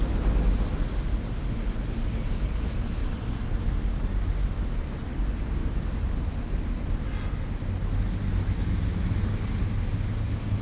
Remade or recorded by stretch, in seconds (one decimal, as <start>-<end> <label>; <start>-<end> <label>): 0.0-10.6 recorded